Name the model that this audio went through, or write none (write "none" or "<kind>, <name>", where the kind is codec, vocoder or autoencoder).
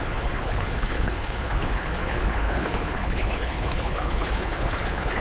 codec, HILCodec